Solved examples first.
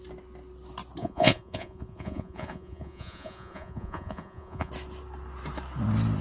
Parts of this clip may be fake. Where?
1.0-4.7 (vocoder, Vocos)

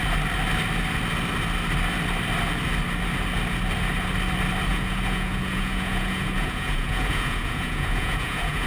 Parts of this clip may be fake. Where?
4.7-8.7 (vocoder, Vocos)

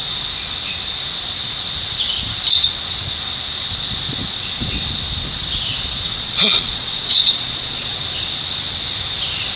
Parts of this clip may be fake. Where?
6.1-8.0 (vocoder, Vocos)

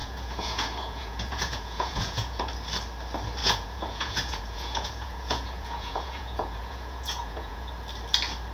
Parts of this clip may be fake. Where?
0.0-2.5 (vocoder, Vocos); 3.4-7.7